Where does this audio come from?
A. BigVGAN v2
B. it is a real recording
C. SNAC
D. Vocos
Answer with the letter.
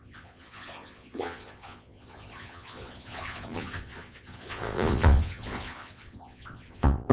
D